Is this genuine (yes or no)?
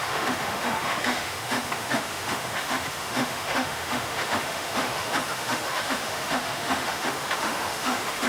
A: no